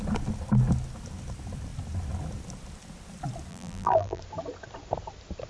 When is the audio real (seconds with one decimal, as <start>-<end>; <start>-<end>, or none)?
0.0-3.5; 4.2-5.5